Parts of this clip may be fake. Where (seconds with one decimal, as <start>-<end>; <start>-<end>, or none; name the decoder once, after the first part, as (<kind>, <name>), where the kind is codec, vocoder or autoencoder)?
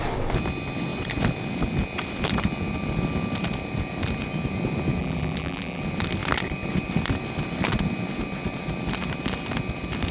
5.0-5.8 (vocoder, BigVGAN v2)